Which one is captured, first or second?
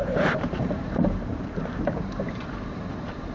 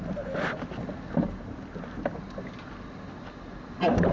second